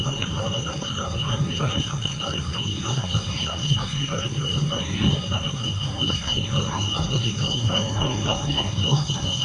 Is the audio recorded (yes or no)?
no